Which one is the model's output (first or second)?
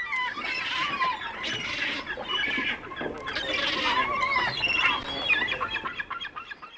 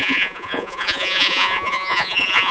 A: second